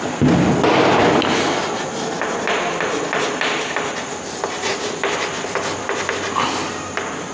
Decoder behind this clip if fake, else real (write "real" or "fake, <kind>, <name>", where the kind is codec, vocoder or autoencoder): real